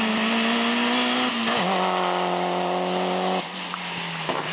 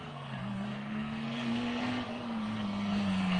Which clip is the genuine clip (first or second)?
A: first